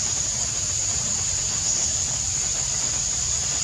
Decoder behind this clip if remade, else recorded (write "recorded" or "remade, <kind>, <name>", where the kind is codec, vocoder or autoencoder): recorded